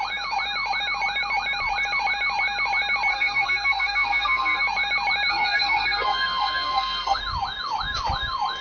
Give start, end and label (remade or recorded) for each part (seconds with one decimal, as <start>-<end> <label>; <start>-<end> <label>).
0.0-3.1 recorded; 3.1-4.6 remade; 4.6-5.3 recorded; 5.3-7.2 remade; 7.2-8.6 recorded